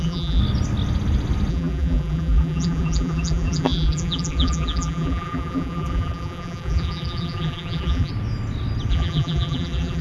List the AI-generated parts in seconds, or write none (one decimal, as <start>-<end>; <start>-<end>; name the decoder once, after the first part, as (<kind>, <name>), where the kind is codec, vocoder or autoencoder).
0.0-0.4 (vocoder, BigVGAN v2); 1.5-8.1; 8.9-10.0

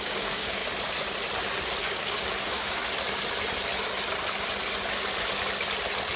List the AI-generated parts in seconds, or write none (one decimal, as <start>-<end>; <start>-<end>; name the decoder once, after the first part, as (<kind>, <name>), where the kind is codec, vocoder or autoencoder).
0.0-0.6 (codec, DAC); 1.8-2.8

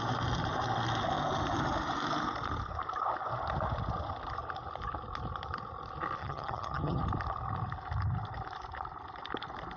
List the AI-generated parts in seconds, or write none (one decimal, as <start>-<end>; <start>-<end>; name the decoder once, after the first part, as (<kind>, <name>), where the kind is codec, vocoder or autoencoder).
6.2-7.0 (vocoder, HiFi-GAN)

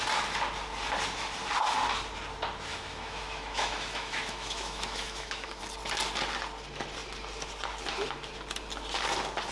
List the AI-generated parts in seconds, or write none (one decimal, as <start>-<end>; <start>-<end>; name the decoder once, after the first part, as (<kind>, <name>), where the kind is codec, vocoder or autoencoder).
2.7-5.6 (autoencoder, DAC-VAE)

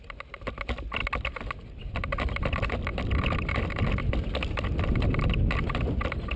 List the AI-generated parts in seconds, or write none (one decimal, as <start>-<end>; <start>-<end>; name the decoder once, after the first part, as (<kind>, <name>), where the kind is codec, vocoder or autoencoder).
none

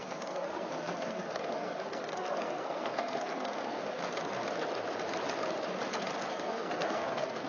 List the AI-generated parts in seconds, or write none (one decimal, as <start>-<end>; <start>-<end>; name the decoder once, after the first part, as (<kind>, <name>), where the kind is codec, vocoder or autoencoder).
0.0-4.0 (codec, SNAC); 6.3-7.5

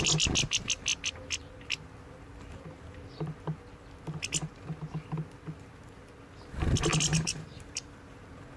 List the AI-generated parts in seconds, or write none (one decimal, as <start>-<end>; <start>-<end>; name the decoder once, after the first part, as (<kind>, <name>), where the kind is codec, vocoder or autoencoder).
7.1-8.0 (vocoder, BigVGAN v2)